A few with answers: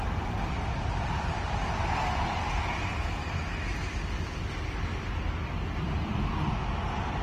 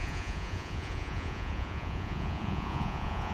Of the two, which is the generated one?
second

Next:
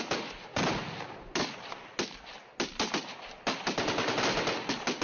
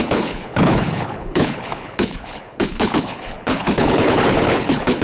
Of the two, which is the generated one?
second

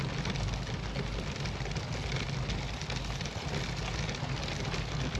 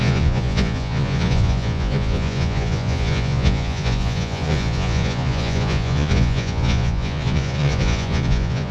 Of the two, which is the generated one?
second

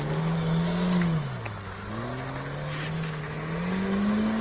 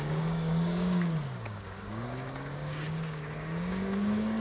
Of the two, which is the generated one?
second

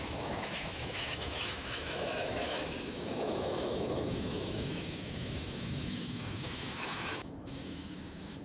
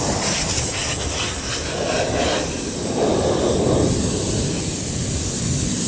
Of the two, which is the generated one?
first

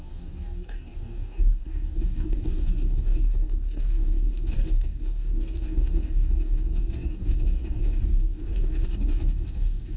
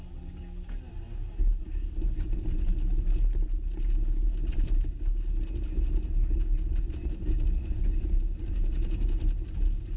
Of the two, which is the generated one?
first